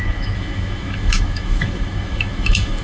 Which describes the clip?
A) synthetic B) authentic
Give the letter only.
A